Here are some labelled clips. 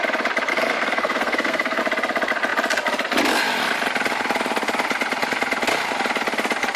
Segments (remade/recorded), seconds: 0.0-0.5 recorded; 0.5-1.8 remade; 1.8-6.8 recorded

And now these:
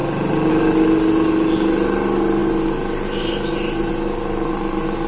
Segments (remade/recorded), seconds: 0.0-5.1 recorded

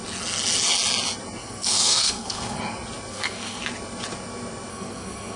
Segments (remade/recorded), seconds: 0.0-1.4 recorded; 1.4-2.6 remade; 2.6-3.1 recorded; 3.1-3.6 remade; 3.6-4.7 recorded; 4.7-5.4 remade

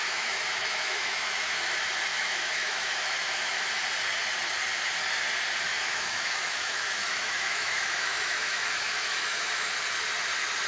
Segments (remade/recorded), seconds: 0.0-1.7 remade; 1.7-2.1 recorded; 2.1-3.7 remade; 3.7-5.7 recorded; 5.7-9.7 remade; 9.7-10.7 recorded

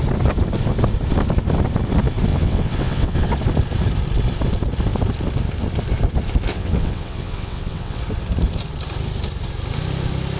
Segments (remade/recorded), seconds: 0.0-2.3 recorded; 2.3-3.3 remade; 3.3-6.5 recorded; 6.5-8.0 remade; 8.0-10.4 recorded